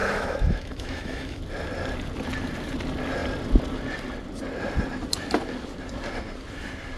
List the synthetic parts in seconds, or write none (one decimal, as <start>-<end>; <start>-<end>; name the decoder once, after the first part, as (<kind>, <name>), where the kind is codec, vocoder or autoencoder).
0.0-1.4 (autoencoder, DAC-VAE)